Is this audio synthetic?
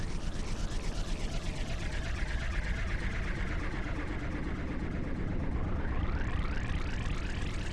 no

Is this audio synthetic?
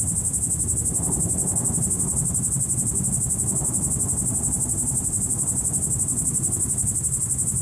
no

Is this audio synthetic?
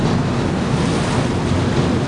no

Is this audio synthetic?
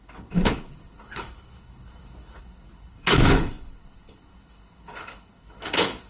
yes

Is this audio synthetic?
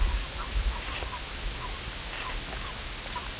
no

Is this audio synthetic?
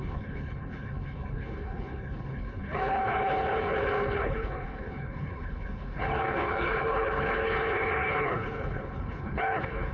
yes